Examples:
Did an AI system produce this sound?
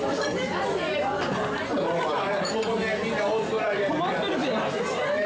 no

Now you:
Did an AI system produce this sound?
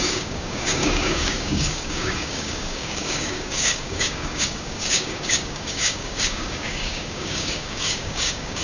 yes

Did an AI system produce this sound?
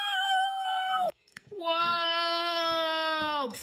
yes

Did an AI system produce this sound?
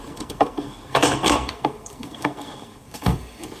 yes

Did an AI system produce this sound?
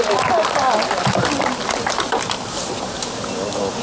no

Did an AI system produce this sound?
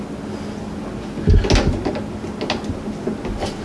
no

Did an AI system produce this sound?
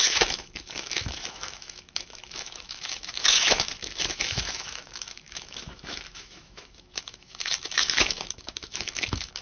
yes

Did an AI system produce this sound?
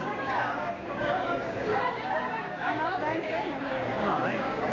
yes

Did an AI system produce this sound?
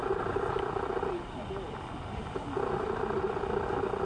no